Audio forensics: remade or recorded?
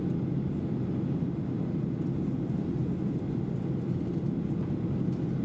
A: recorded